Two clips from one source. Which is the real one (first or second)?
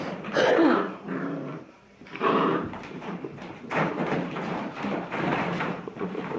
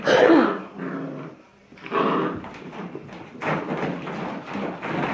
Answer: second